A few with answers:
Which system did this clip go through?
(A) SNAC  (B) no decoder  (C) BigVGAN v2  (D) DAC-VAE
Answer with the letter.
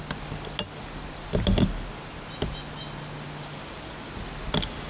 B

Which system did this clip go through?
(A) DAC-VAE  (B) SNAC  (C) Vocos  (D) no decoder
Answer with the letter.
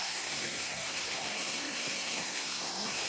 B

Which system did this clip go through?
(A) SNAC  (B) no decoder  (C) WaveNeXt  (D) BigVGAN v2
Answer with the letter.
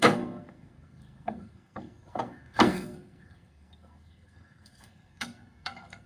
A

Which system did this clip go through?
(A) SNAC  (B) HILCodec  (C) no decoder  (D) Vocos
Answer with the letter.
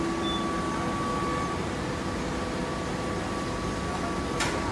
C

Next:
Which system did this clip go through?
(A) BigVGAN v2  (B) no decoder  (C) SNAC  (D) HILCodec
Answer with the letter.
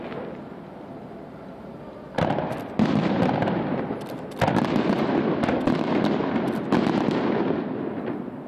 B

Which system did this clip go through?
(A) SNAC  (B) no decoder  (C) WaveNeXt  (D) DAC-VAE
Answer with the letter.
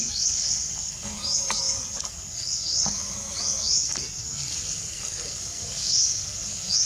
A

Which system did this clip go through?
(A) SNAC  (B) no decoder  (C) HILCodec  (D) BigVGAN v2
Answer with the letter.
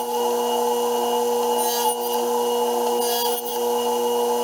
B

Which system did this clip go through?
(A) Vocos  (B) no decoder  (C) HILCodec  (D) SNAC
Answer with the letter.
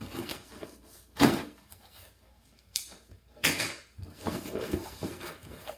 D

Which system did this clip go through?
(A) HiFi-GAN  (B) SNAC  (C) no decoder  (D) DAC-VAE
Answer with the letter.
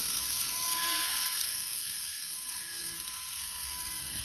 B